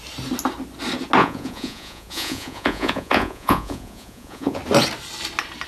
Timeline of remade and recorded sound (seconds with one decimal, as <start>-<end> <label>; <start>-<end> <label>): 0.0-1.2 recorded; 1.2-4.6 remade; 4.6-5.7 recorded